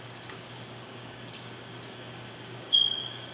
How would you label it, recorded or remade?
remade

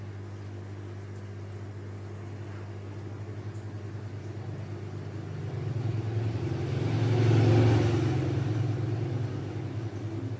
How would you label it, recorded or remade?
recorded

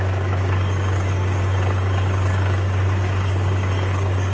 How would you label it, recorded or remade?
remade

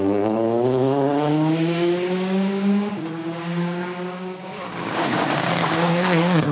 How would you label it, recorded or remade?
remade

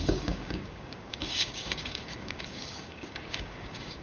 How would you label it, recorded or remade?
remade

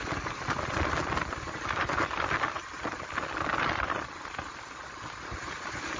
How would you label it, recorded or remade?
recorded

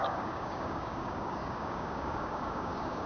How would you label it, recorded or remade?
remade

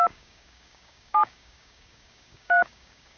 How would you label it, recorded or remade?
remade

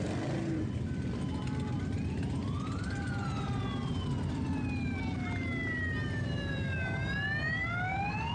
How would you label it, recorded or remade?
recorded